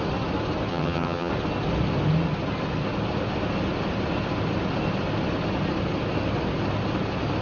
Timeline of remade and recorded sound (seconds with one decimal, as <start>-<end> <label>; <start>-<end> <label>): 0.0-0.7 recorded; 0.7-1.3 remade; 1.3-7.4 recorded